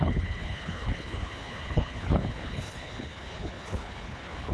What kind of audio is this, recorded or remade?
remade